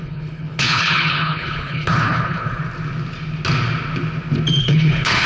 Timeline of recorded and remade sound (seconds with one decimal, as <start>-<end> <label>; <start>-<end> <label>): 0.0-2.6 remade; 2.6-4.6 recorded; 4.6-5.3 remade